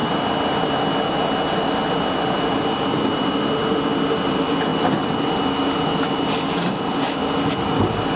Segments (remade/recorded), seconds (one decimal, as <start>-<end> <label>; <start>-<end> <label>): 0.0-8.2 recorded

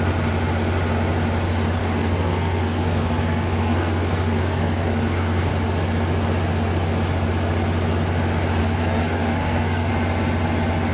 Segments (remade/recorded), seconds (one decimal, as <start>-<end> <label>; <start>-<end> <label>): 0.0-1.8 recorded; 1.8-5.5 remade; 5.5-8.6 recorded; 8.6-9.9 remade; 9.9-10.9 recorded

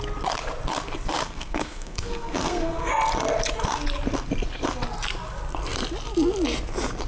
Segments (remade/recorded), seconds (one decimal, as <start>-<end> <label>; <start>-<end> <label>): 0.0-1.2 recorded; 1.2-2.9 remade; 2.9-7.1 recorded

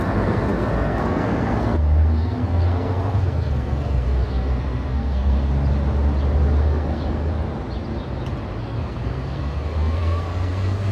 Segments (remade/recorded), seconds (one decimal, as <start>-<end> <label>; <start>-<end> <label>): 0.0-5.5 remade; 5.5-6.6 recorded; 6.6-7.3 remade; 7.3-8.6 recorded; 8.6-10.9 remade

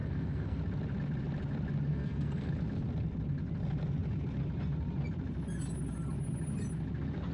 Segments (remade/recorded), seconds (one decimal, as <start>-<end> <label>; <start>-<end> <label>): 0.0-0.6 remade; 0.6-1.9 recorded; 1.9-2.5 remade; 2.5-7.3 recorded